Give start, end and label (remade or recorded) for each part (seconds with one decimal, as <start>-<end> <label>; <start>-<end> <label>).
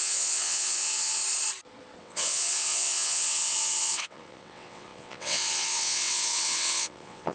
0.0-1.2 remade; 1.2-2.0 recorded; 2.0-7.3 remade